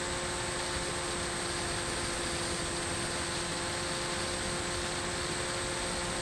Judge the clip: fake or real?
real